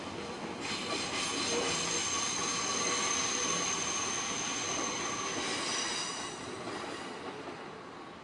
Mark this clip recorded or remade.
recorded